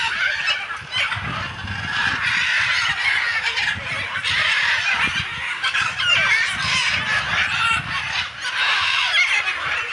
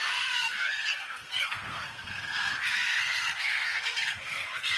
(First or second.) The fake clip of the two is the second